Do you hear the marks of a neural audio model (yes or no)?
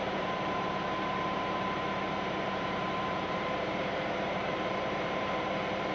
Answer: yes